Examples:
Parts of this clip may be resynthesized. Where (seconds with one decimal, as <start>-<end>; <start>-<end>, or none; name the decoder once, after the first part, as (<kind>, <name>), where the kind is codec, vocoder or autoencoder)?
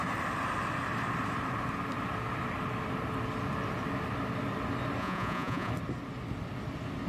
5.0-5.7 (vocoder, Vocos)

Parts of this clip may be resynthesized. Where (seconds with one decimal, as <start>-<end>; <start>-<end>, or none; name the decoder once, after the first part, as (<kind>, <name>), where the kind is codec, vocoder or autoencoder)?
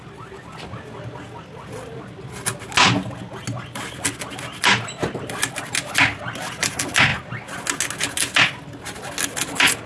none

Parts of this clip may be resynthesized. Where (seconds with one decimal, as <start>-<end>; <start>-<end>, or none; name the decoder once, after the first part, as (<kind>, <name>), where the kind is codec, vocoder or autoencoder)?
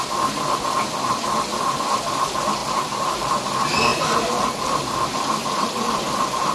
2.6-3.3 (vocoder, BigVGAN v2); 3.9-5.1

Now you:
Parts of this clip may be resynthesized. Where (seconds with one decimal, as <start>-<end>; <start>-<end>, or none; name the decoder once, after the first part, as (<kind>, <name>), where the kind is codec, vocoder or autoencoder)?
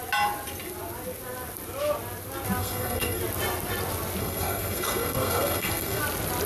2.6-3.2 (codec, SNAC); 4.2-6.0